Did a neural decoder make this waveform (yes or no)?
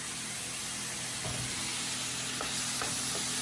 no